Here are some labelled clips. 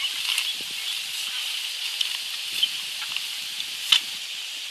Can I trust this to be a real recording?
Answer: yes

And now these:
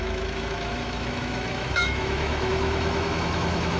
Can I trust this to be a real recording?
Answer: no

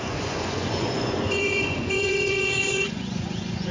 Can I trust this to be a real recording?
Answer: no